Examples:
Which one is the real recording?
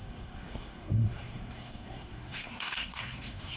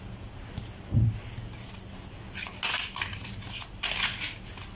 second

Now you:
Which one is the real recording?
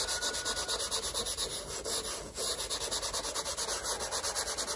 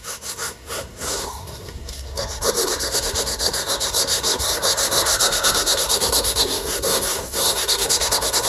first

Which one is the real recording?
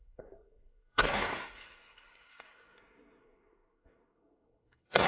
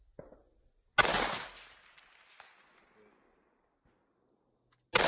second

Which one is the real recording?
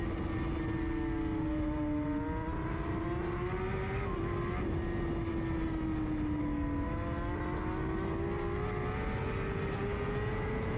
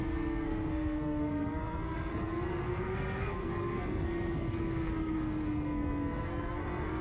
first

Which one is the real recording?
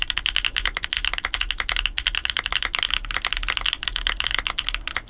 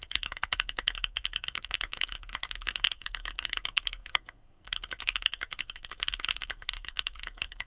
first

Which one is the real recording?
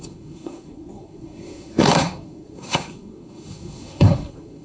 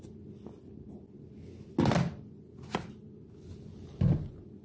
second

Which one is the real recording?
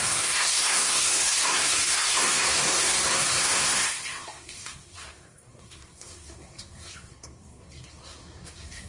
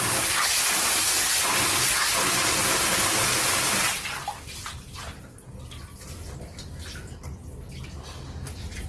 second